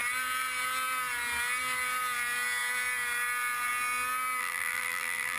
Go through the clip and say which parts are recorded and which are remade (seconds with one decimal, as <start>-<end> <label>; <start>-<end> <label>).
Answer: 0.0-4.4 recorded; 4.4-5.4 remade